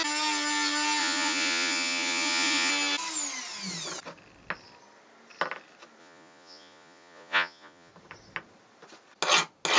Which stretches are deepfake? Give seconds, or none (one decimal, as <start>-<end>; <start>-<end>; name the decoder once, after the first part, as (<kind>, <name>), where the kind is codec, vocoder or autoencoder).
1.0-2.7 (vocoder, Vocos); 6.0-7.9